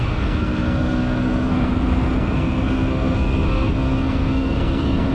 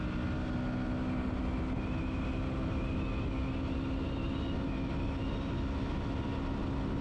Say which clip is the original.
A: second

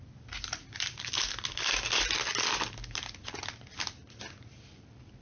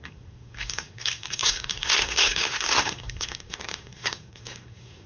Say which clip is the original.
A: first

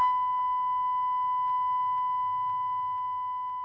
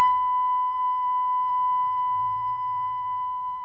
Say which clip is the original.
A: first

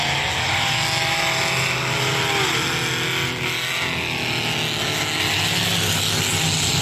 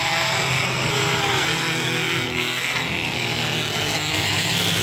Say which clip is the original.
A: first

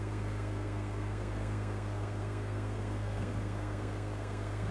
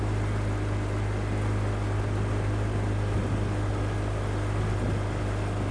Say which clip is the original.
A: second